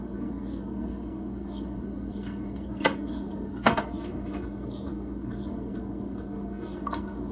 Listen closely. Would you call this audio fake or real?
fake